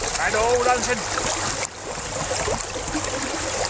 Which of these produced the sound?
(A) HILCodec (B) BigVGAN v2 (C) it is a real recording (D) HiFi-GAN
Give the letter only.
C